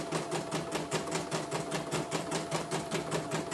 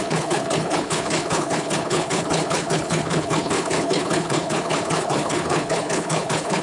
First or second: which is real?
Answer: first